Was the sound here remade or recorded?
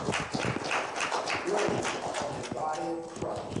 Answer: recorded